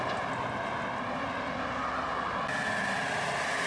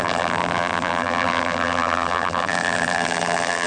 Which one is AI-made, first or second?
second